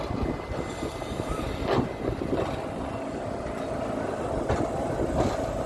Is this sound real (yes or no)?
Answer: yes